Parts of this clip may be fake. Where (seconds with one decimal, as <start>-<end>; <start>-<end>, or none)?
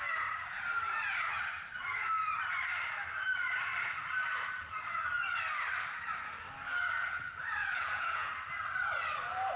7.6-8.3